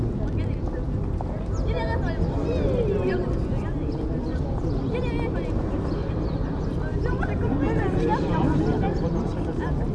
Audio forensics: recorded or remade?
recorded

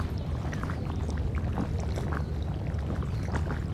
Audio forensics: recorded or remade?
recorded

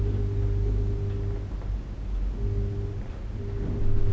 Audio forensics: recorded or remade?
recorded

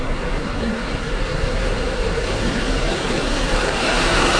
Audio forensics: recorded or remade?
remade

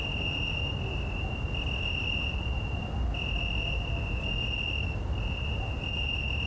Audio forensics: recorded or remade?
recorded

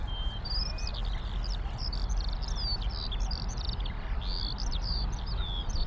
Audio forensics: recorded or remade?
recorded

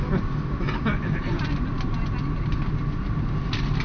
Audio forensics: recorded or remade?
recorded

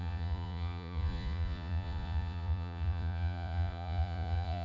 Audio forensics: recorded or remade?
remade